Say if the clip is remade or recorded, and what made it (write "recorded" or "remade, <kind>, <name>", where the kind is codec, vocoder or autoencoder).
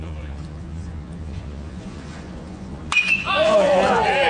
remade, vocoder, Vocos